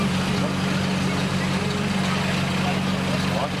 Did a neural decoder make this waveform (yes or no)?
no